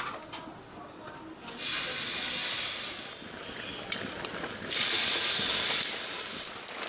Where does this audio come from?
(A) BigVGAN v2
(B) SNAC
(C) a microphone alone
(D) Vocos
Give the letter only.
C